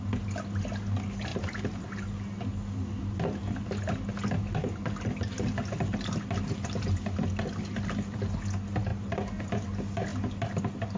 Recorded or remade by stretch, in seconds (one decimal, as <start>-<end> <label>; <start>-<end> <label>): 0.0-1.3 recorded; 1.3-1.9 remade; 1.9-11.0 recorded

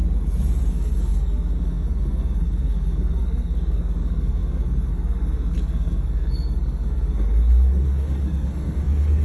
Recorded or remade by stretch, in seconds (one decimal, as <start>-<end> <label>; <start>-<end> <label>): 0.0-0.7 recorded; 0.7-9.2 remade